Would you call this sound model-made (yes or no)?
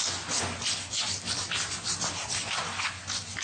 no